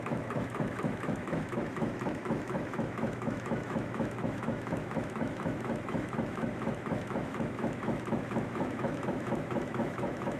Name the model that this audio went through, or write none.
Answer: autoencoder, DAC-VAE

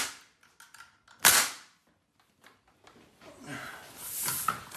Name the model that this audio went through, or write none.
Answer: none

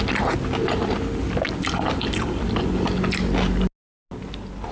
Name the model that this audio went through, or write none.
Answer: none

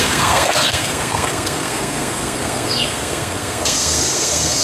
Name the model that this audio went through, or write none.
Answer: codec, SNAC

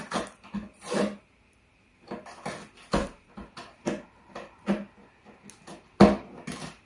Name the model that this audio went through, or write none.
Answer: none